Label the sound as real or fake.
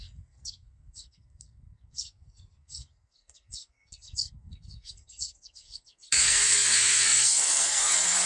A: fake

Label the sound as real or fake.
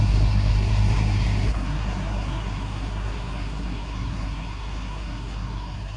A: fake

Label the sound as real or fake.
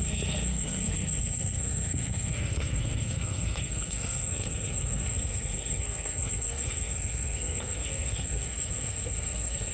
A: fake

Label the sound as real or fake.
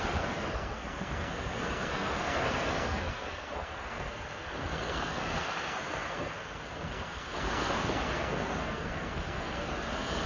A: fake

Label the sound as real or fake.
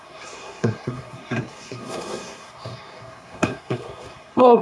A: fake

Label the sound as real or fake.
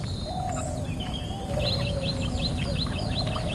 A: real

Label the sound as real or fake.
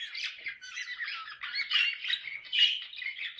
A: real